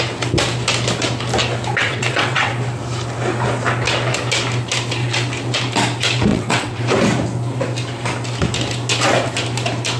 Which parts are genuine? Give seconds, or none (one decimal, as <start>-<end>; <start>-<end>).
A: 0.0-1.8; 2.5-6.3; 6.8-10.0